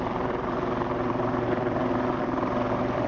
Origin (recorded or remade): remade